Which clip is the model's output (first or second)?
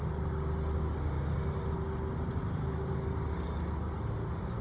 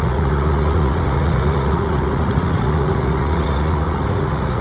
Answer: second